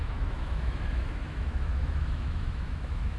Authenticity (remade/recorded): remade